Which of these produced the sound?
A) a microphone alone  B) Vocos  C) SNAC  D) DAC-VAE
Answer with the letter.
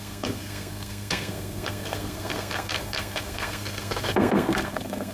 C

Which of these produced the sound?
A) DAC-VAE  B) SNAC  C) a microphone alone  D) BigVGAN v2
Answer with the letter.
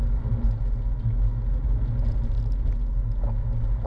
C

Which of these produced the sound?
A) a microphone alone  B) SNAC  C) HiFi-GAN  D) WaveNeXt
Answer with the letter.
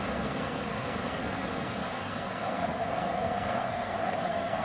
B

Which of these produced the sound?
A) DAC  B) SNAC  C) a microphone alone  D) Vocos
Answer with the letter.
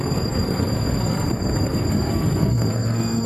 B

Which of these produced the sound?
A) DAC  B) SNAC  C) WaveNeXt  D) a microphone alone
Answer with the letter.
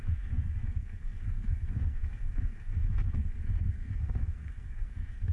B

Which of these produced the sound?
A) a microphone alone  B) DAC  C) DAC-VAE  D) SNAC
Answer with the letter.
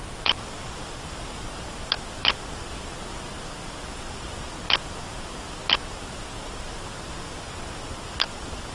A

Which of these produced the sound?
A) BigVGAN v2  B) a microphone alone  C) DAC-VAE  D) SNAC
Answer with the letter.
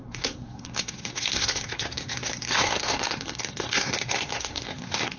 D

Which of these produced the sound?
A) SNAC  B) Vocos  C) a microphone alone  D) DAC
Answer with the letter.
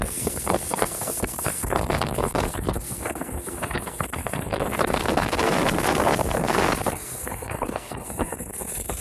A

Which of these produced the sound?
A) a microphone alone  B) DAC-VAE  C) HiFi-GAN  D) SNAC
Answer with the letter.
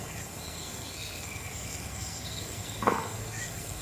D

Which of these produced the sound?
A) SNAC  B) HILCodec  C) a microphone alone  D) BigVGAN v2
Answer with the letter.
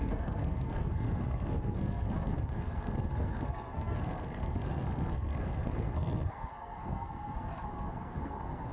A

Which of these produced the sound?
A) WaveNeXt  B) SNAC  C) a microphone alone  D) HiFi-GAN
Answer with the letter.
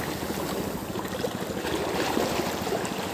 C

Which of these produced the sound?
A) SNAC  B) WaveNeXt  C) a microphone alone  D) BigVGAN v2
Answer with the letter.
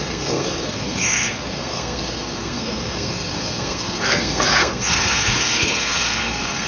A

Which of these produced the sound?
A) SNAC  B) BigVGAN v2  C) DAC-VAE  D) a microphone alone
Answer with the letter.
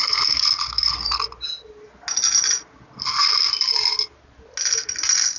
D